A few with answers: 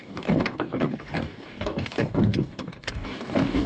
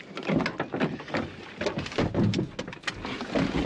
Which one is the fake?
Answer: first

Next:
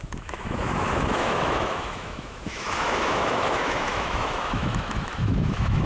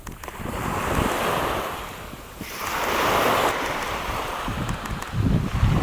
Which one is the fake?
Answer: first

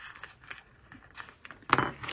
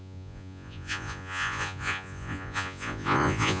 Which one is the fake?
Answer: second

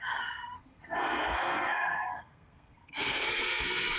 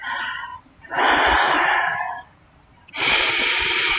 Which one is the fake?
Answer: first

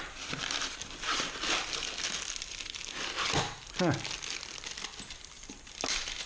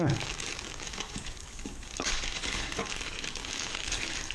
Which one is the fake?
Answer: second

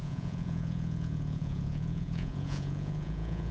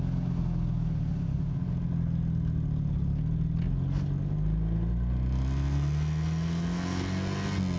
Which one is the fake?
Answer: first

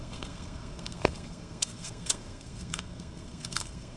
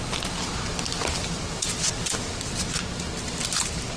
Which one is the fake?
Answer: first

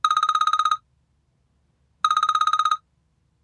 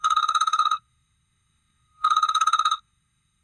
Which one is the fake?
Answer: second